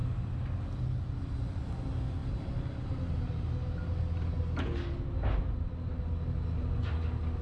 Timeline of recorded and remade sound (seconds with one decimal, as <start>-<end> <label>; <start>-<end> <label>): 0.0-7.4 recorded